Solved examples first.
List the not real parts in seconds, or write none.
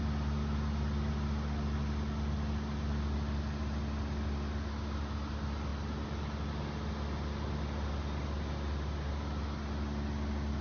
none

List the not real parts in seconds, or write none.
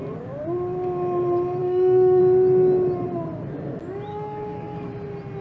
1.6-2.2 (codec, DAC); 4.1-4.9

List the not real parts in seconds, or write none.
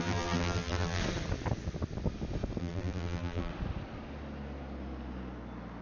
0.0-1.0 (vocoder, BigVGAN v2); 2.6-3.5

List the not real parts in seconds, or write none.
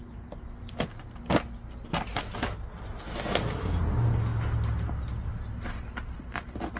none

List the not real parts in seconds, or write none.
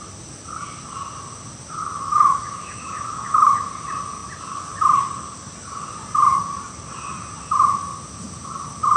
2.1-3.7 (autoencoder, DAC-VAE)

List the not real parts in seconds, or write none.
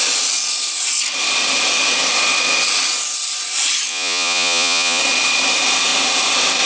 3.9-5.0 (vocoder, Vocos)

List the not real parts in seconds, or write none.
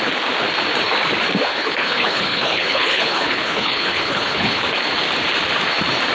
1.5-4.6 (codec, HILCodec)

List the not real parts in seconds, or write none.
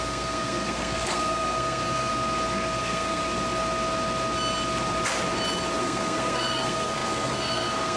0.0-2.1 (codec, SNAC); 2.8-3.2; 5.8-8.0